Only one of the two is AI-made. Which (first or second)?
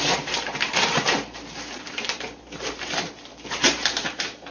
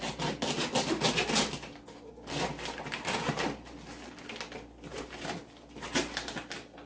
first